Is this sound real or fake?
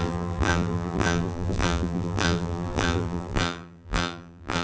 fake